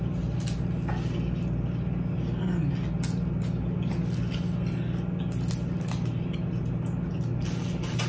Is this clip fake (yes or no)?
no